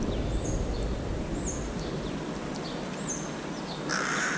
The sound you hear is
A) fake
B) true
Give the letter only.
B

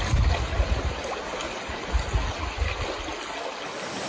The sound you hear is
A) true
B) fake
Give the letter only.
A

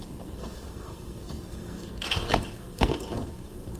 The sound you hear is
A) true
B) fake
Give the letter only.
B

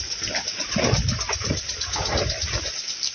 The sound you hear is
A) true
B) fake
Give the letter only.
A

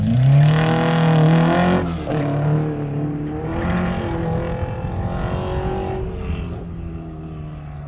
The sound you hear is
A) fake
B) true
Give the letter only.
B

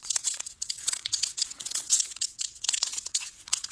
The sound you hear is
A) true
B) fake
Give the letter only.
B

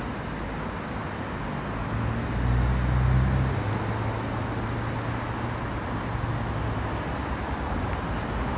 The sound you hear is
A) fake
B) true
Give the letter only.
B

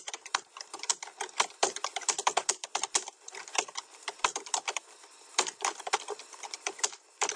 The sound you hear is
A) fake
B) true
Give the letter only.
A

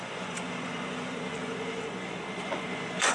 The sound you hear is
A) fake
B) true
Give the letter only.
A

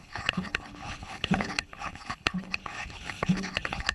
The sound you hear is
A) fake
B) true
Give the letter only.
A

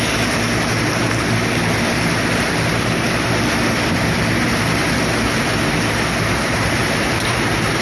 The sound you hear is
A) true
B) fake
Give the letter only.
A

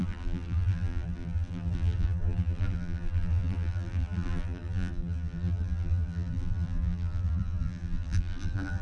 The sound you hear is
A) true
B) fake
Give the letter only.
B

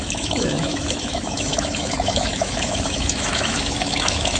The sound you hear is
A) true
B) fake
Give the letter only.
B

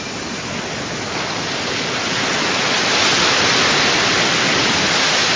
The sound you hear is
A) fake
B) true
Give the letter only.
B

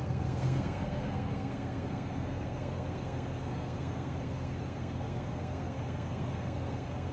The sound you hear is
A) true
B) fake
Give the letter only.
B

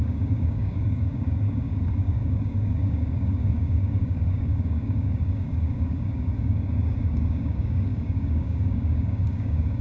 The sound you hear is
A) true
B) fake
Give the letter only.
B